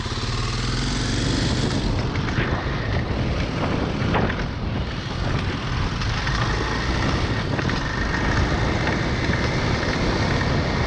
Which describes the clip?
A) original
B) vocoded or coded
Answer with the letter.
A